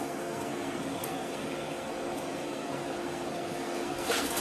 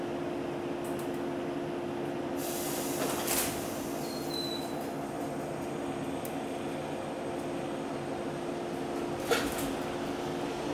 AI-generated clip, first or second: first